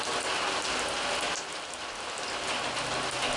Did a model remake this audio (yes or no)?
no